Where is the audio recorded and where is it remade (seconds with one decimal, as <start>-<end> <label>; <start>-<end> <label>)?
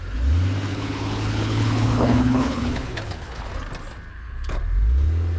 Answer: 0.0-0.7 recorded; 0.7-3.5 remade; 3.5-4.1 recorded; 4.1-4.6 remade; 4.6-5.4 recorded